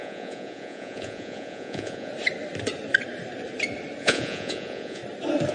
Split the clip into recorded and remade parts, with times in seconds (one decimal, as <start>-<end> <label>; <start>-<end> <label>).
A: 0.0-2.1 remade; 2.1-4.0 recorded; 4.0-5.0 remade; 5.0-5.5 recorded

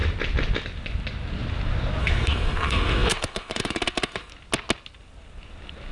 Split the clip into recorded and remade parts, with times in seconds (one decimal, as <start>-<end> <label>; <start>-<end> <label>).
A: 0.0-2.0 recorded; 2.0-4.3 remade; 4.3-5.9 recorded

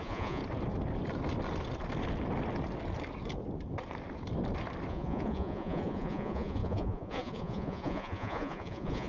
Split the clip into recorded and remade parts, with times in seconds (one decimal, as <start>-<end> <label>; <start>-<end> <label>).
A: 0.0-0.4 remade; 0.4-4.9 recorded; 4.9-9.1 remade